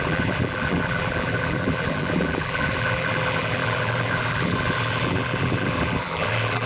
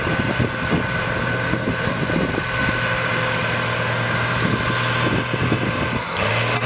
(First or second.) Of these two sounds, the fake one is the first